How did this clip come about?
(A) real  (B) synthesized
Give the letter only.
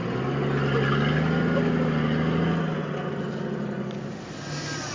A